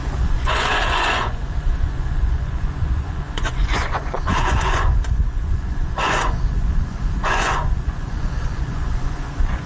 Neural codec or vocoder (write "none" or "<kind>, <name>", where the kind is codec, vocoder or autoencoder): vocoder, Vocos